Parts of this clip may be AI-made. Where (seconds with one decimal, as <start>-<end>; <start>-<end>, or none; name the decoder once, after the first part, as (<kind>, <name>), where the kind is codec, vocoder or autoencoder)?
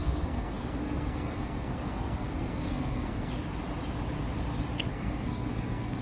0.0-3.3 (codec, SNAC); 4.9-6.0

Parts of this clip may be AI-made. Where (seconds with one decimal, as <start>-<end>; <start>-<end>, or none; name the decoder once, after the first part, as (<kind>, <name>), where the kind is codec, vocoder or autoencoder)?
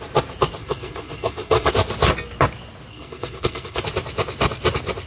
0.6-1.7 (codec, SNAC); 2.9-3.8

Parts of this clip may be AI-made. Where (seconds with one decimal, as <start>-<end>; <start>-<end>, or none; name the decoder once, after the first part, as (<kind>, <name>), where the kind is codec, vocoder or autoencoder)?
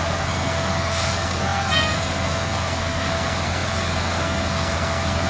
0.0-5.3 (codec, SNAC)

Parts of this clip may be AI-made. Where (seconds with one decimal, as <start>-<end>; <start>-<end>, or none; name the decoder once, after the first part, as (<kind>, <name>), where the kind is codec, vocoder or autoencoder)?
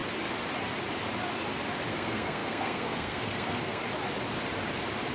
1.9-3.8 (codec, SNAC)